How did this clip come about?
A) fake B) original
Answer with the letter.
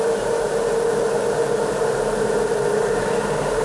B